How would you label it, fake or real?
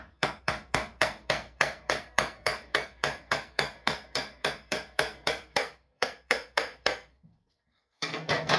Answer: fake